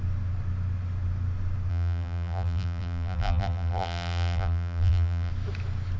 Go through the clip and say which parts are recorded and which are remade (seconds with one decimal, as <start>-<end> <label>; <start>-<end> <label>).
0.0-1.7 recorded; 1.7-5.3 remade; 5.3-6.0 recorded